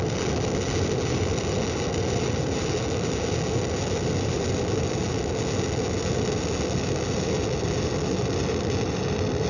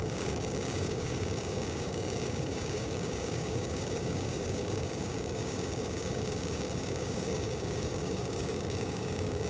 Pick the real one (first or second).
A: first